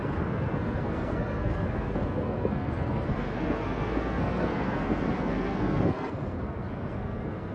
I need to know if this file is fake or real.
fake